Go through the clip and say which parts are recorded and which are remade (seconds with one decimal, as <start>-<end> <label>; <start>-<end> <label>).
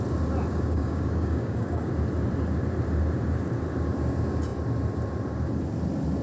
0.0-0.5 recorded; 0.5-1.9 remade; 1.9-6.2 recorded